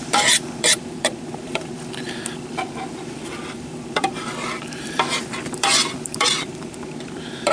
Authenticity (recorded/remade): remade